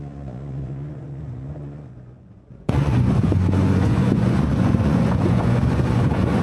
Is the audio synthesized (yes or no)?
yes